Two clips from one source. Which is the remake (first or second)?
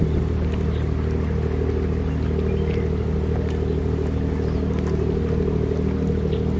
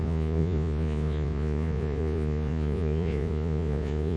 second